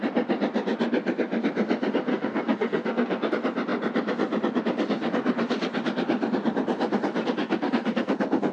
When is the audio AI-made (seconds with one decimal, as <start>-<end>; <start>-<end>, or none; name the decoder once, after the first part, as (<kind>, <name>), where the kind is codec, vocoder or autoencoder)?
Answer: 2.1-3.3 (codec, SNAC); 7.4-8.5

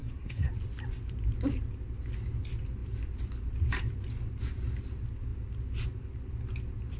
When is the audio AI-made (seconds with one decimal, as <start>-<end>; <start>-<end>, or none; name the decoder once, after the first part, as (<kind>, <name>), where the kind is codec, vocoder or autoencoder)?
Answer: 0.0-0.5 (codec, SNAC)

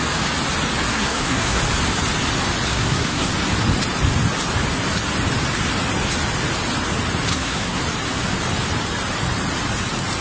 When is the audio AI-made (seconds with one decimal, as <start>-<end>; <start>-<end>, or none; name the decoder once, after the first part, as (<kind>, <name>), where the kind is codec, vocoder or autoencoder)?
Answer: 0.9-1.6 (codec, SNAC); 2.7-3.3; 7.3-7.8

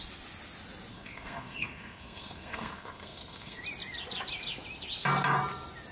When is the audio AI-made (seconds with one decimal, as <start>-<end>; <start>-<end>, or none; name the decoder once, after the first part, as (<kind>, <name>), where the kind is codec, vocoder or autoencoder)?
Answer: 0.9-3.6 (codec, SNAC)

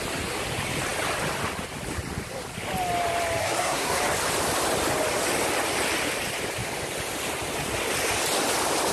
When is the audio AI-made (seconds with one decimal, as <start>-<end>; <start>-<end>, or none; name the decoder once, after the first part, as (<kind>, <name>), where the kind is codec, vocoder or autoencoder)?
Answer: 3.4-4.0 (codec, SNAC)